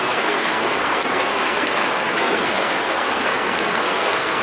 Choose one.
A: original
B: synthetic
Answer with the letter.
B